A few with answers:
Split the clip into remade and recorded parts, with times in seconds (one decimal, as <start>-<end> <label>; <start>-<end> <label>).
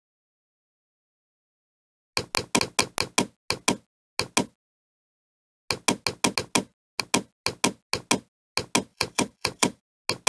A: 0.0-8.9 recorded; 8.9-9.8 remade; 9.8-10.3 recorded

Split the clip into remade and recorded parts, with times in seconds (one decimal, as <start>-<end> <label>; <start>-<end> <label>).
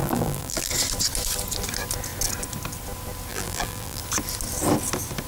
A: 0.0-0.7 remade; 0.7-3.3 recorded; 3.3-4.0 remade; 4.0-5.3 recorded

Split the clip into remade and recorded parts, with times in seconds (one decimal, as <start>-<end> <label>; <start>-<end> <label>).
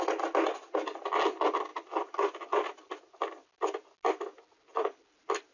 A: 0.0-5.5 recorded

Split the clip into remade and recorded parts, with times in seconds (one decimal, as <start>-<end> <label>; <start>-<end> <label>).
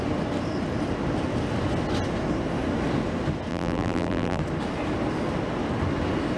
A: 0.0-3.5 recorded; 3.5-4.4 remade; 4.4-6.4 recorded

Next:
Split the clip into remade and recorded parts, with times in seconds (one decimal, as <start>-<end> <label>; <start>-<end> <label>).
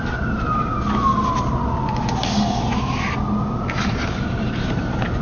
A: 0.0-0.7 remade; 0.7-3.8 recorded; 3.8-5.2 remade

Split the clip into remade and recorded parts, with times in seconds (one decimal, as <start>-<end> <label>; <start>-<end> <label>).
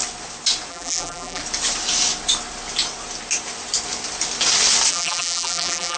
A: 0.0-0.7 recorded; 0.7-1.4 remade; 1.4-4.9 recorded; 4.9-6.0 remade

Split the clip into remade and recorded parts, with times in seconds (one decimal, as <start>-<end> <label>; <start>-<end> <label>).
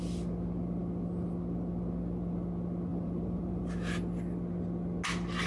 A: 0.0-2.9 recorded; 2.9-3.7 remade; 3.7-5.5 recorded